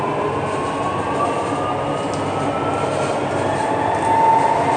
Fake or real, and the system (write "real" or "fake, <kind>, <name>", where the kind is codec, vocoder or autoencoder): real